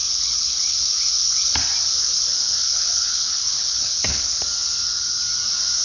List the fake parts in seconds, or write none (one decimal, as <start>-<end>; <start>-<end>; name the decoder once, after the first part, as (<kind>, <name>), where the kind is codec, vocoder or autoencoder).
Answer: 0.0-1.6 (codec, HILCodec); 2.0-4.4